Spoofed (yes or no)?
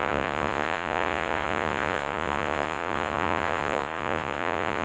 yes